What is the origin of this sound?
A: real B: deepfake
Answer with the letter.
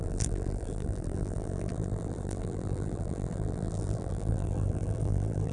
B